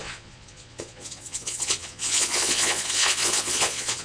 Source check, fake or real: fake